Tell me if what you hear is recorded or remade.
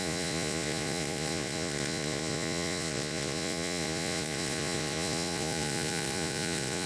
remade